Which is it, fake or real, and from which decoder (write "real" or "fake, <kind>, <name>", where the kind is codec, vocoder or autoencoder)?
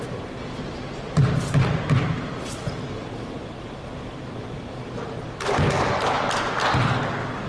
real